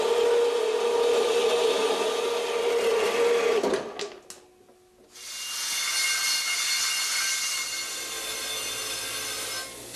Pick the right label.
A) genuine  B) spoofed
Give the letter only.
A